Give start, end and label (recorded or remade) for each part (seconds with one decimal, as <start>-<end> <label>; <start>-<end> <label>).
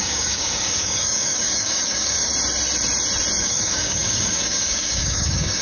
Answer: 0.0-2.3 remade; 2.3-3.4 recorded; 3.4-5.6 remade